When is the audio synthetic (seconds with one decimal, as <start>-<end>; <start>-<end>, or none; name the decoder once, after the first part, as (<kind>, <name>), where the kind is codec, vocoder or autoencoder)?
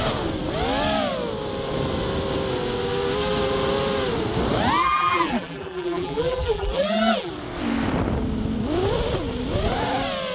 4.8-7.3 (vocoder, BigVGAN v2)